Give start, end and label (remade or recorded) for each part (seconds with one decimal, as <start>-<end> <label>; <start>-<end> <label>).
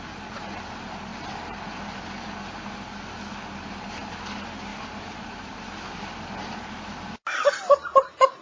0.0-4.7 recorded; 4.7-5.6 remade; 5.6-8.4 recorded